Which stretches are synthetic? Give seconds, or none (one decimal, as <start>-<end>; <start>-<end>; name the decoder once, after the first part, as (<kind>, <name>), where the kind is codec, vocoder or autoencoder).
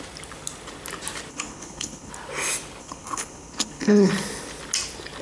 1.3-2.1 (codec, HILCodec); 2.8-4.1